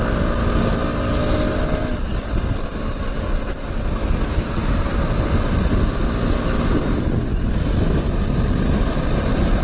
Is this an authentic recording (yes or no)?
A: yes